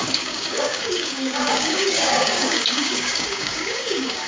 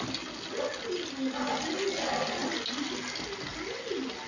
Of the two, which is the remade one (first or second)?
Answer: first